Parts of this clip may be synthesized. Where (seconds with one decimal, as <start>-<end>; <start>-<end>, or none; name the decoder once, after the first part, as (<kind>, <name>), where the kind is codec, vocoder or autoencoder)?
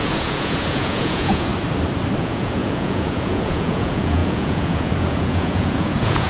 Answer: 0.0-1.5 (vocoder, Vocos); 2.2-6.3